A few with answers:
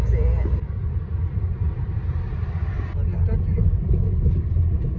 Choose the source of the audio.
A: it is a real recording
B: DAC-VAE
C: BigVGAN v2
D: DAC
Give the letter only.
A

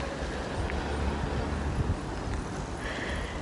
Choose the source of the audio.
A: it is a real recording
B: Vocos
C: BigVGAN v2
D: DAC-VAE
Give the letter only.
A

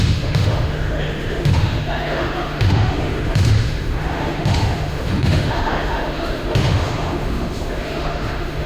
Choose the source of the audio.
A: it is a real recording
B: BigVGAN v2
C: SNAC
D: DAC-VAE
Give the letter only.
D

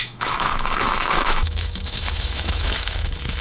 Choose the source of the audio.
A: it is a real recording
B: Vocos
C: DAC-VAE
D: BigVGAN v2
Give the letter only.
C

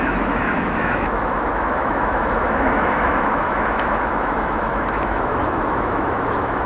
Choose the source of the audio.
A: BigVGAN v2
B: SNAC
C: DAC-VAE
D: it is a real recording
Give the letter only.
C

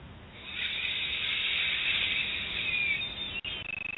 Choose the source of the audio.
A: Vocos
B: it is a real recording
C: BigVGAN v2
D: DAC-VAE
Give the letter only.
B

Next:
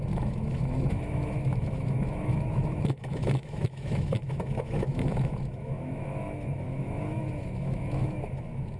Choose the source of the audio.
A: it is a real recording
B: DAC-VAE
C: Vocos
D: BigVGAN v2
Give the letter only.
B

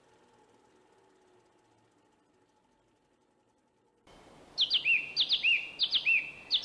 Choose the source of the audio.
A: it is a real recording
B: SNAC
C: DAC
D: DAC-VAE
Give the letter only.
A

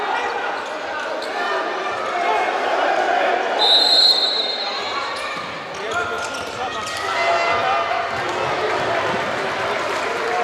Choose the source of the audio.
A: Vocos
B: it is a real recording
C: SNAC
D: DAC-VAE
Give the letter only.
B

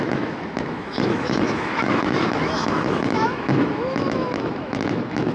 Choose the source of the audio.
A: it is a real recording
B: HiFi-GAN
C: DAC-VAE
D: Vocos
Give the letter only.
C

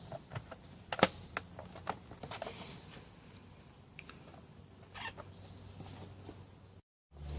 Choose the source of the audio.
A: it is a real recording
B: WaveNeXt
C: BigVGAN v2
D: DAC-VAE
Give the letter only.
A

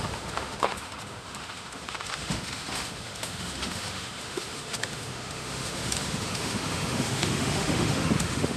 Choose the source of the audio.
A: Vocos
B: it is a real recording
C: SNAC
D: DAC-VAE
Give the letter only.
D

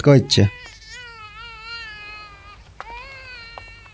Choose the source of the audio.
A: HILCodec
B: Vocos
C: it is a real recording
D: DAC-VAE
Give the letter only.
C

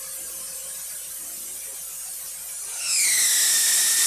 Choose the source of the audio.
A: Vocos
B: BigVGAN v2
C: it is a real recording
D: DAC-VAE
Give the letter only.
C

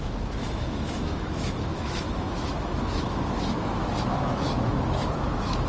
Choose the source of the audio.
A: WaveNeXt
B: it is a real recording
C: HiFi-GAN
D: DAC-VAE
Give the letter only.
D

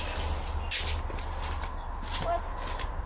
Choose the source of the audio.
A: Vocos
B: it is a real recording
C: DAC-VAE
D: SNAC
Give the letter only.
B